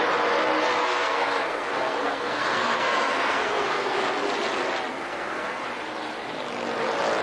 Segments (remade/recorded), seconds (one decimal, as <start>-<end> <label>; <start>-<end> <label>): 0.0-0.8 recorded; 0.8-4.0 remade; 4.0-4.9 recorded; 4.9-5.6 remade; 5.6-7.2 recorded